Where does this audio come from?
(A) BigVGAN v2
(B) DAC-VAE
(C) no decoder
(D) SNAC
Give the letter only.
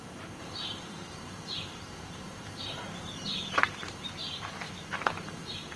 A